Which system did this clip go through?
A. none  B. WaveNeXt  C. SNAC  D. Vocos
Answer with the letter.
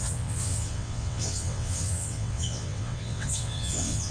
B